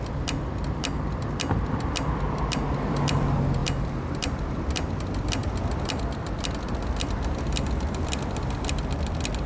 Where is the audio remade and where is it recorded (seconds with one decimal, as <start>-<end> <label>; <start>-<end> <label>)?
0.0-9.5 recorded